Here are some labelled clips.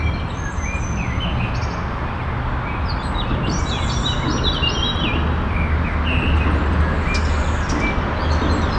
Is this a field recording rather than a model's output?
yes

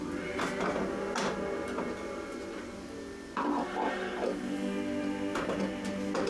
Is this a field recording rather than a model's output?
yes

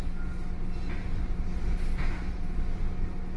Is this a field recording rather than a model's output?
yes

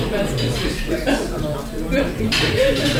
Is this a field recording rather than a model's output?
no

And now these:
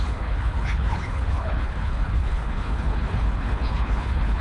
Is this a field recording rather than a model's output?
no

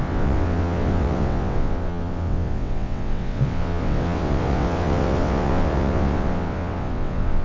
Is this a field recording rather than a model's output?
no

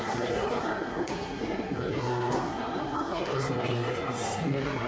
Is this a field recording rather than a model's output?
no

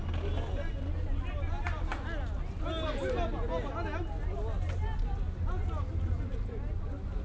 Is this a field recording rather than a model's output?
yes